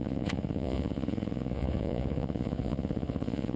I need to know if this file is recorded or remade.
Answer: remade